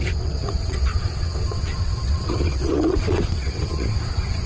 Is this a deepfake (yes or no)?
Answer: yes